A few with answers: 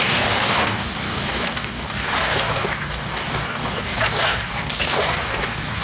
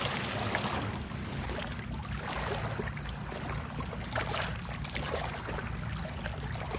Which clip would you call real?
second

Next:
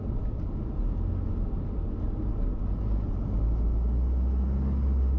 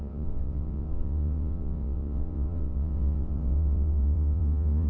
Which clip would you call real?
first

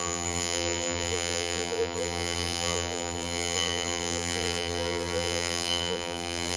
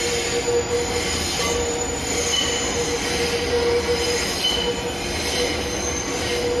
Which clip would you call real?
second